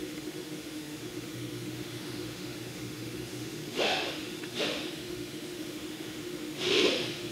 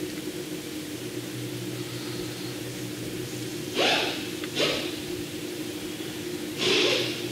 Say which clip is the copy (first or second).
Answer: first